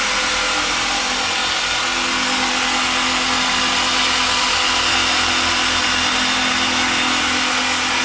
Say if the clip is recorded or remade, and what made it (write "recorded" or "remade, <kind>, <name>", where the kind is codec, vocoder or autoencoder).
recorded